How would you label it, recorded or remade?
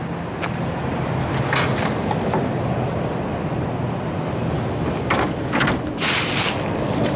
recorded